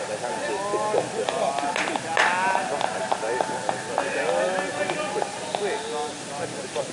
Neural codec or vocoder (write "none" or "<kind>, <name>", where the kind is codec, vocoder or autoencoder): none